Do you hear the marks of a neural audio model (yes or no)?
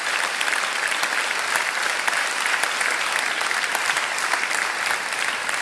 yes